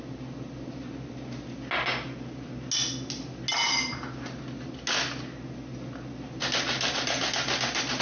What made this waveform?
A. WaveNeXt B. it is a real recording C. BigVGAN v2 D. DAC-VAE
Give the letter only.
B